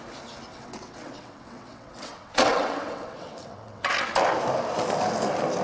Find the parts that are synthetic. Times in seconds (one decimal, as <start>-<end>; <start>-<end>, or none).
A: 0.5-3.9